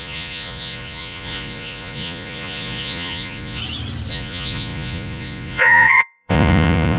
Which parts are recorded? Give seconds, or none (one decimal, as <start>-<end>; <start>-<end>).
3.6-4.1